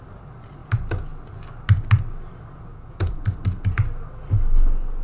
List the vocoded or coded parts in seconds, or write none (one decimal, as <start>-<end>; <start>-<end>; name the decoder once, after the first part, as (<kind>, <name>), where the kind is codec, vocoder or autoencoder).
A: 2.7-3.2 (vocoder, Vocos)